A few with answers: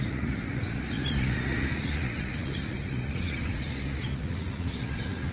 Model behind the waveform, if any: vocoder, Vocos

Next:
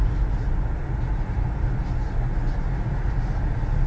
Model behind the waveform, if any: none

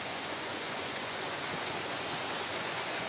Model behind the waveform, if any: vocoder, Vocos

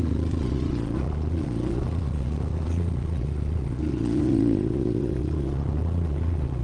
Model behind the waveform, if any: vocoder, Vocos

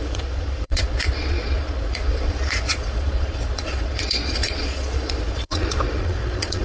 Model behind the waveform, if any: vocoder, Vocos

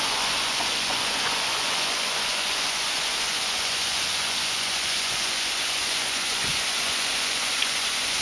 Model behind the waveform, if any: vocoder, Vocos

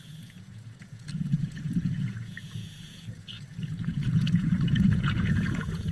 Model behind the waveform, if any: vocoder, Vocos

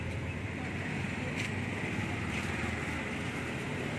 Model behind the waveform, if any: none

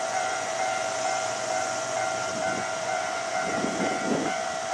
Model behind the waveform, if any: vocoder, Vocos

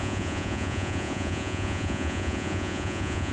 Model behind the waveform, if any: vocoder, Vocos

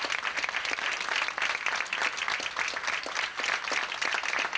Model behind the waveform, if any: none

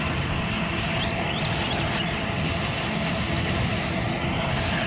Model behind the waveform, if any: none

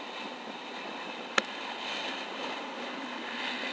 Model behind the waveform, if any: none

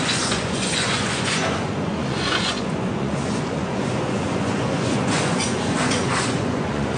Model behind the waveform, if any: vocoder, Vocos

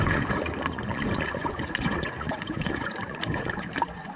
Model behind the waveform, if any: vocoder, Vocos